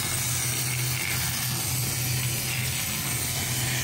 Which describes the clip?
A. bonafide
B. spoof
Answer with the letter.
A